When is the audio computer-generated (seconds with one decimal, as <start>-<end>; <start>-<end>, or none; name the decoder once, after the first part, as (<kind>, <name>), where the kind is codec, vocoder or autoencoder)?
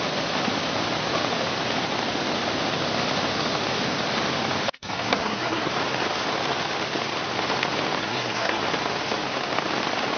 4.8-5.7 (codec, SNAC); 8.0-8.6